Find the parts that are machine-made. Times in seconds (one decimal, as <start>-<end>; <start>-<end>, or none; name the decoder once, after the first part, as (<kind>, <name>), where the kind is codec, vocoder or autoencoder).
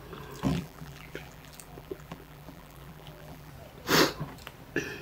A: 0.5-3.5 (vocoder, BigVGAN v2)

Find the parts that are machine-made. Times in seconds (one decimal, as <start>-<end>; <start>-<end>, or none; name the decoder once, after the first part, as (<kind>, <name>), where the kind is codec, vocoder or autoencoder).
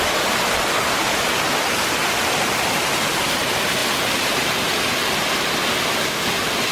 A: none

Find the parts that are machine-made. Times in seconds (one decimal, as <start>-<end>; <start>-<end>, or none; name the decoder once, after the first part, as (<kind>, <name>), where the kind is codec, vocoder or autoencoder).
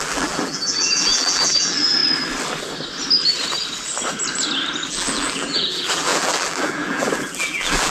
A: 0.0-2.0 (vocoder, BigVGAN v2); 4.9-7.9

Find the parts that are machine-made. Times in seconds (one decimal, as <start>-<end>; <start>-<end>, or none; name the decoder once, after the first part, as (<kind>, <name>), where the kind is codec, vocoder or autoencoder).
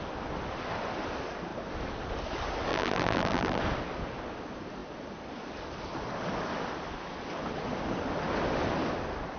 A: 2.7-3.6 (vocoder, BigVGAN v2)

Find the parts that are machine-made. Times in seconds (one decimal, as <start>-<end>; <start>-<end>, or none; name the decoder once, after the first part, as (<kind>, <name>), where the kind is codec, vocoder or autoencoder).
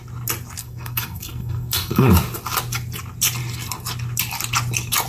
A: 0.6-2.1 (codec, SNAC)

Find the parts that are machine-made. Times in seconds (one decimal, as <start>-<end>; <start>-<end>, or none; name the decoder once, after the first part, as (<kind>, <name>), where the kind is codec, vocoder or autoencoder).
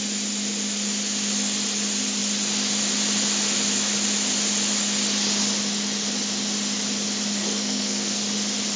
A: 7.4-8.2 (codec, SNAC)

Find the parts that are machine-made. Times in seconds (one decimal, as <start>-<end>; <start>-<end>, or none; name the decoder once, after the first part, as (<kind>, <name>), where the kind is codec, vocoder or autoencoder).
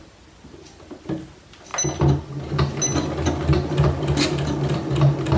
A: none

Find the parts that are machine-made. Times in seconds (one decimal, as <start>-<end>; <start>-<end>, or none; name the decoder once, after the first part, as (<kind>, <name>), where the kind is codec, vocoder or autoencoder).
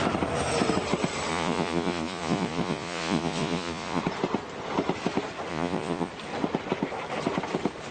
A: 1.3-4.0 (vocoder, Vocos); 5.5-6.1